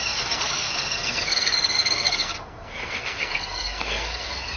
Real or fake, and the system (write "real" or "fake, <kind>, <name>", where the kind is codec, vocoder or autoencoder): fake, codec, SNAC